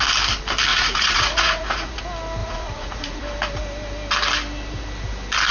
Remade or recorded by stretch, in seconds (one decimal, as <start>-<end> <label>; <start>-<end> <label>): 0.0-0.7 recorded; 0.7-2.0 remade; 2.0-2.4 recorded; 2.4-3.2 remade; 3.2-5.5 recorded

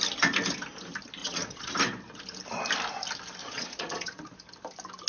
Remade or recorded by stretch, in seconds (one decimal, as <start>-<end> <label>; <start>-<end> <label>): 0.0-1.2 recorded; 1.2-1.7 remade; 1.7-3.4 recorded; 3.4-4.3 remade; 4.3-5.1 recorded

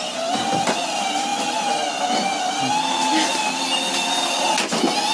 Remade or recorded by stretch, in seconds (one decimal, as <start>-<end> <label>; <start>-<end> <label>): 0.0-5.1 recorded

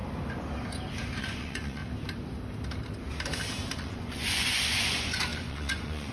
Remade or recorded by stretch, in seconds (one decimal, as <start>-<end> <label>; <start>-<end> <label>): 0.0-1.2 recorded; 1.2-1.8 remade; 1.8-3.7 recorded; 3.7-6.1 remade